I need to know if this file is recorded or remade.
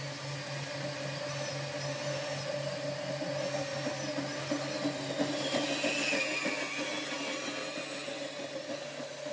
recorded